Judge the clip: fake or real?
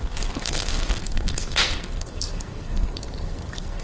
fake